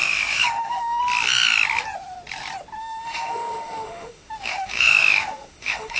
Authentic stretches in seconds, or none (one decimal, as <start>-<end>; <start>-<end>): 1.0-2.8